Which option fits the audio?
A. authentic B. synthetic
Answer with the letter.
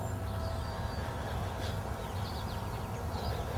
A